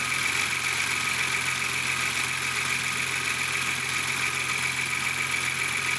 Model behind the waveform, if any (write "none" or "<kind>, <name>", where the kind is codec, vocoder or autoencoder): none